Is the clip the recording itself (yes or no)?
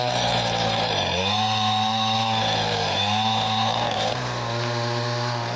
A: yes